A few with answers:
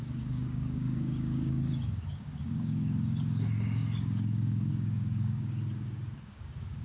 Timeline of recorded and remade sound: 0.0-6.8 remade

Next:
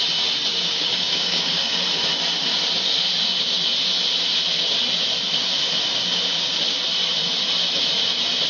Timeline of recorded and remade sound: 0.0-0.5 recorded; 0.5-1.8 remade; 1.8-8.5 recorded

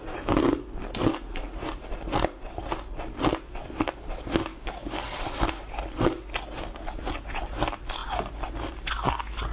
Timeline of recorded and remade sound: 0.0-4.5 recorded; 4.5-5.0 remade; 5.0-9.5 recorded

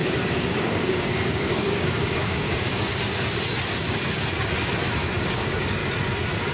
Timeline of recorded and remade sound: 0.0-3.1 remade; 3.1-5.3 recorded; 5.3-5.8 remade; 5.8-6.5 recorded